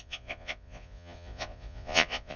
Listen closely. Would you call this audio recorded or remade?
remade